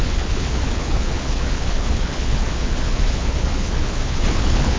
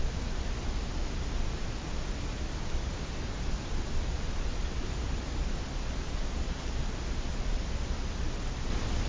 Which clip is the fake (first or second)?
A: first